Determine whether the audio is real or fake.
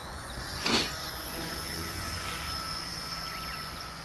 fake